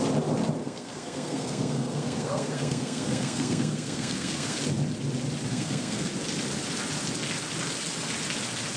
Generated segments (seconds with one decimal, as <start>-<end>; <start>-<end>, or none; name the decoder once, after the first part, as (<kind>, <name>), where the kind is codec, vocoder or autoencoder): 0.6-4.6 (codec, SNAC); 5.5-6.1